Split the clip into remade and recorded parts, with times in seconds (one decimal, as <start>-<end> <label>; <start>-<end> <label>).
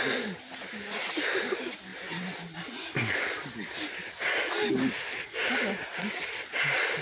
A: 0.0-7.0 recorded